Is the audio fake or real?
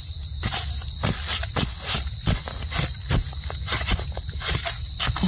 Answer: real